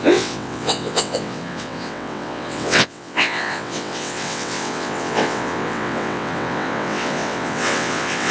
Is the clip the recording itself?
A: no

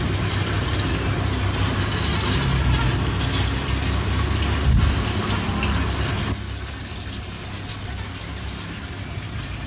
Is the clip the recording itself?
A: yes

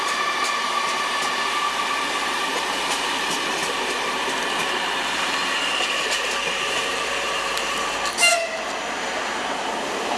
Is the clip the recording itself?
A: no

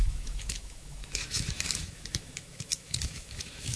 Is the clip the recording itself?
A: no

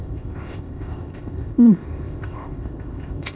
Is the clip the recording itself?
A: no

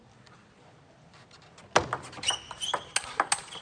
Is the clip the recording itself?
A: yes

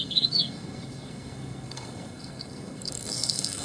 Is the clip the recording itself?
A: no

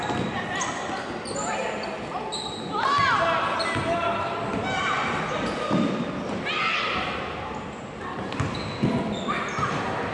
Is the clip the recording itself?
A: yes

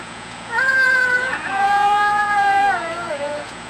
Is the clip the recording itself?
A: no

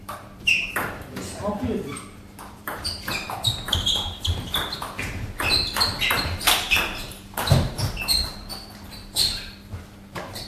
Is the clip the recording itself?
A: no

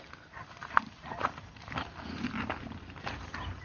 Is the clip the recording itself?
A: yes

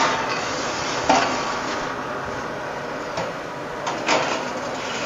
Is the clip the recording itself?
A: yes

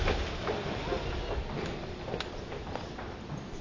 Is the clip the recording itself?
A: yes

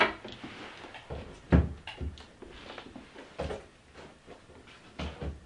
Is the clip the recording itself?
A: yes